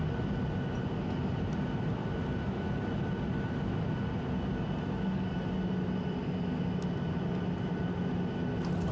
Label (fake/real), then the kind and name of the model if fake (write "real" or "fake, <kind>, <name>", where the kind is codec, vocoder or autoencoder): real